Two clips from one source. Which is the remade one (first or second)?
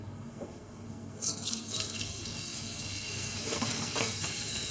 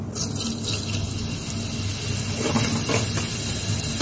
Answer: first